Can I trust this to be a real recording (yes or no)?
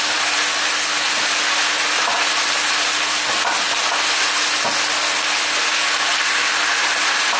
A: yes